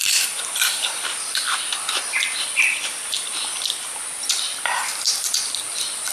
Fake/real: fake